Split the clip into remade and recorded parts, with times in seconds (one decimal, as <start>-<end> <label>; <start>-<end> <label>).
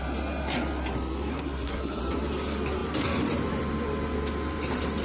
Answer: 0.0-1.3 recorded; 1.3-2.0 remade; 2.0-5.0 recorded